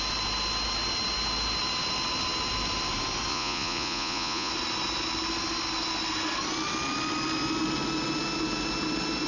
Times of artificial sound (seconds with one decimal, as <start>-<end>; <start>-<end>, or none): 3.3-4.5